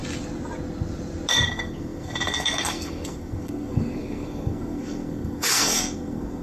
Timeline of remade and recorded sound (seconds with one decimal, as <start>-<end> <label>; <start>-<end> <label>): 0.0-1.3 recorded; 1.3-6.4 remade